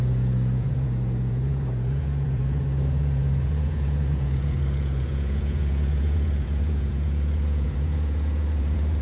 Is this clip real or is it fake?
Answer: fake